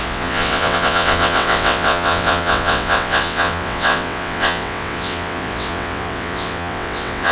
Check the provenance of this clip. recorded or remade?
remade